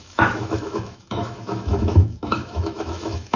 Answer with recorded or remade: remade